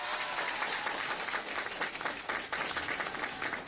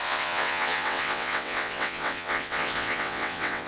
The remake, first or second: second